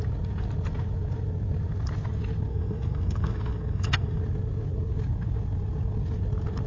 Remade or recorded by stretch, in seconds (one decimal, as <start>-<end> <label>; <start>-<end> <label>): 0.0-2.5 recorded; 2.5-4.2 remade; 4.2-6.7 recorded